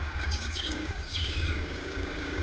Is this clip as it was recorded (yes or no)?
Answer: no